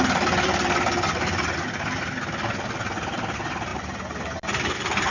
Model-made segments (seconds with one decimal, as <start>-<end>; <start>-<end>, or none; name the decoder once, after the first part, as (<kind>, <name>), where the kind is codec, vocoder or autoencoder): none